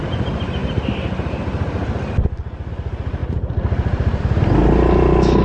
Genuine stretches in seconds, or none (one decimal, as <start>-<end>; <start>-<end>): 0.0-5.4